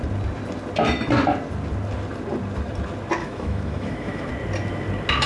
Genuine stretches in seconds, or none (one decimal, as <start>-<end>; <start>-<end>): 0.0-3.2; 4.3-5.3